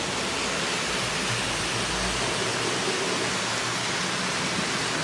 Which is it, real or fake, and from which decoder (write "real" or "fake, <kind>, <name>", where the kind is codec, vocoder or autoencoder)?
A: real